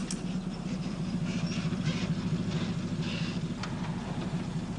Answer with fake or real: real